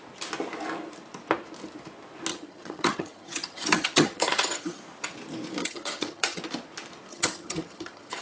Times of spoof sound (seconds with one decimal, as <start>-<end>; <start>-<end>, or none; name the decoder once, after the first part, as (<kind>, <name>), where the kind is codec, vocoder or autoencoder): 2.3-4.8 (vocoder, HiFi-GAN); 5.6-6.4; 7.1-8.2

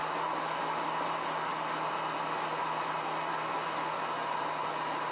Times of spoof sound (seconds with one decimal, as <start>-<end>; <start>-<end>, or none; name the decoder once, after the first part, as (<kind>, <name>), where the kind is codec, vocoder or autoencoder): none

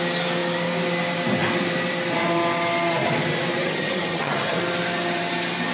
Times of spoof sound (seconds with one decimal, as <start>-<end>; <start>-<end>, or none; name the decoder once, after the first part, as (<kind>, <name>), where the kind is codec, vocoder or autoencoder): 3.6-4.6 (vocoder, HiFi-GAN)

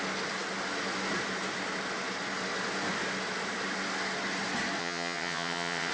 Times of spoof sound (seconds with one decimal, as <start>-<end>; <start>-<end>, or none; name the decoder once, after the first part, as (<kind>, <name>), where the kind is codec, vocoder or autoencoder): 4.8-5.9 (vocoder, HiFi-GAN)

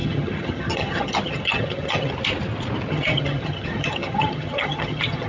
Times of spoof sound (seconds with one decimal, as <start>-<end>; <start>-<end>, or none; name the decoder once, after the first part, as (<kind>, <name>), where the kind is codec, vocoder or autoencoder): 0.0-2.1 (vocoder, HiFi-GAN); 2.9-5.3